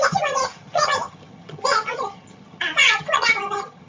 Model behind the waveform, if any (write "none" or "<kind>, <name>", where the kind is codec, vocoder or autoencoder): vocoder, HiFi-GAN